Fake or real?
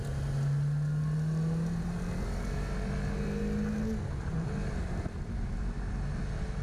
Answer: real